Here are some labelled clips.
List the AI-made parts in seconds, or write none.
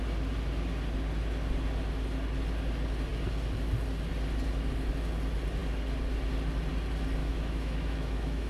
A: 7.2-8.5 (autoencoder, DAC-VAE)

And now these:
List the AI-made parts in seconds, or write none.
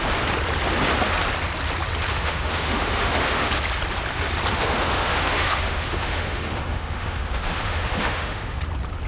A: 2.1-3.5 (autoencoder, DAC-VAE); 4.5-8.6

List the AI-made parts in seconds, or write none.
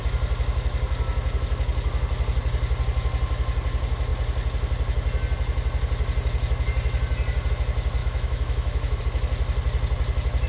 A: 8.0-9.0 (autoencoder, DAC-VAE)